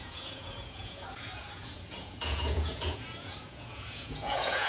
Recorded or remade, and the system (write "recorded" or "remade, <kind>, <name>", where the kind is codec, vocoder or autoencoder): remade, vocoder, Vocos